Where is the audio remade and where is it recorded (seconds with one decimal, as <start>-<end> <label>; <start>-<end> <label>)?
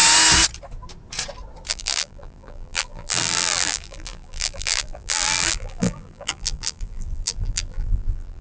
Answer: 0.0-1.7 recorded; 1.7-8.4 remade